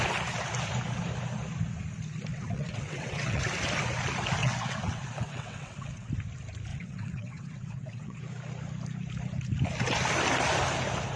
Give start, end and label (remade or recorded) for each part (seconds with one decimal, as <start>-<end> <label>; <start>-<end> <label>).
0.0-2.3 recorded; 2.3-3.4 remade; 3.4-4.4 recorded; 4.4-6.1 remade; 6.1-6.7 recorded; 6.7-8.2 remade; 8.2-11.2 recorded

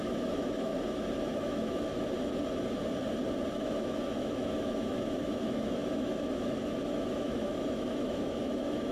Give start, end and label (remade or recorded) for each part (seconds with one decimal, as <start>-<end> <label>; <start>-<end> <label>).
0.0-0.7 remade; 0.7-1.2 recorded; 1.2-1.9 remade; 1.9-3.5 recorded; 3.5-8.9 remade

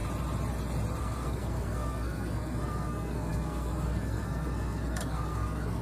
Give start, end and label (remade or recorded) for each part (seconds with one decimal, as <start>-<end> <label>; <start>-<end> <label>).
0.0-1.0 recorded; 1.0-5.8 remade

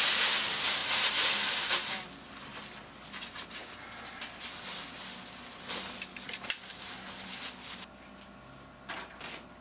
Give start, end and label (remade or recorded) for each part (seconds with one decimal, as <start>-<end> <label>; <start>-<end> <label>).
0.0-9.6 recorded

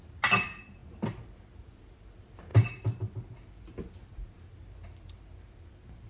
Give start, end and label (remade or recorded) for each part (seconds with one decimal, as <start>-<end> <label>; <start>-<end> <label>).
0.0-6.1 recorded

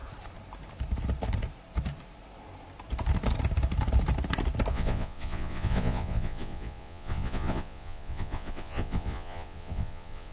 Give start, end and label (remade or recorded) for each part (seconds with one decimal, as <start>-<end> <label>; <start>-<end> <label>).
0.0-4.7 recorded; 4.7-10.3 remade